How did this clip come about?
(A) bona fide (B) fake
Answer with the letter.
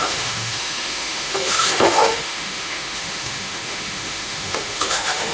B